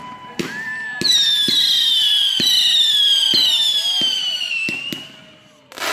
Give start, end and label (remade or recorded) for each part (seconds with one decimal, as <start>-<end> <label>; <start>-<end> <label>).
0.0-5.9 recorded